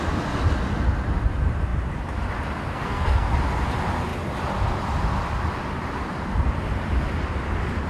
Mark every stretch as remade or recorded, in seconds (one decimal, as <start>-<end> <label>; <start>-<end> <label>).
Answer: 0.0-2.7 recorded; 2.7-3.3 remade; 3.3-7.9 recorded